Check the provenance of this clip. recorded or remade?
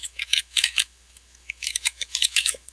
remade